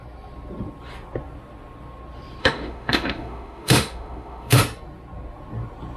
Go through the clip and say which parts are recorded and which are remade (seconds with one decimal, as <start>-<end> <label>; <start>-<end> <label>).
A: 0.0-2.4 recorded; 2.4-4.6 remade; 4.6-6.0 recorded